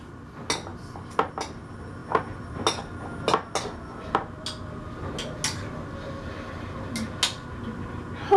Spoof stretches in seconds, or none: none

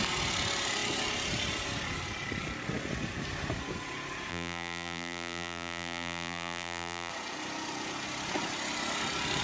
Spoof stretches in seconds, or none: 4.3-7.1

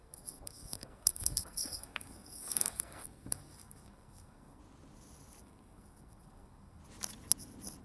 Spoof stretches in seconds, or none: 0.0-4.6; 5.4-6.8